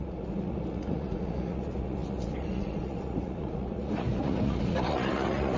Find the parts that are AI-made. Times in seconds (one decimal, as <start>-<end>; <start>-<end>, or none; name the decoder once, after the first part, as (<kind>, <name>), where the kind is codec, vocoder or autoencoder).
0.0-5.6 (vocoder, Vocos)